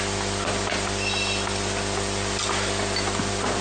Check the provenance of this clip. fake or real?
real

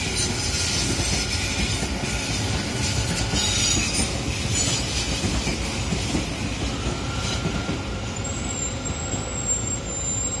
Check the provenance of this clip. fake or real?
real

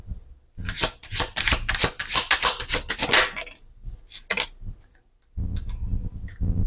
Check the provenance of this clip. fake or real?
real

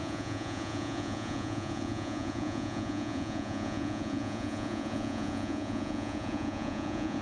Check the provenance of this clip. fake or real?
fake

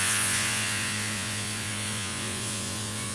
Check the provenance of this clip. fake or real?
fake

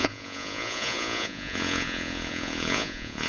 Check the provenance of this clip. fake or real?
fake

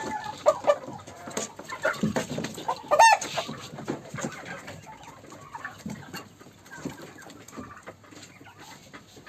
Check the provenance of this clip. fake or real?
real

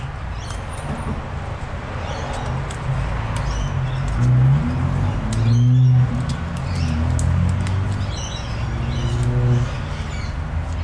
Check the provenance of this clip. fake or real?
real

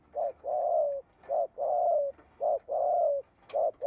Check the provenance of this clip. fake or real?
real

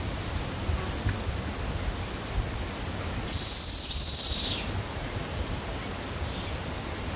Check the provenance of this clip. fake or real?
real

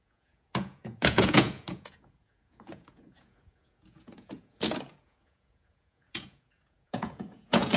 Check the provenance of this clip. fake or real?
fake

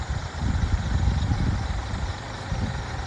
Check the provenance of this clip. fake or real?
real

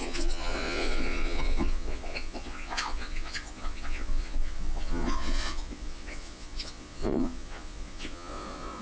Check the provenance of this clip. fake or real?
fake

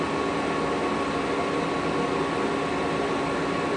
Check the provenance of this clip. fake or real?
real